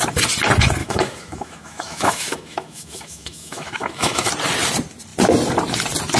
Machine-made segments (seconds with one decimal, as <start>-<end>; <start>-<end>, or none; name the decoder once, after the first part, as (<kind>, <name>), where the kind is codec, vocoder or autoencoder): 0.8-4.3 (autoencoder, DAC-VAE)